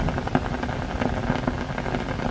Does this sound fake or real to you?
real